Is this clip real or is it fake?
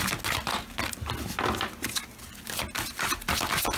real